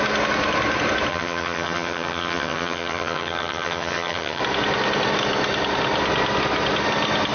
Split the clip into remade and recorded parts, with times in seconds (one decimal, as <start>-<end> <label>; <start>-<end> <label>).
0.0-1.1 recorded; 1.1-4.4 remade; 4.4-7.3 recorded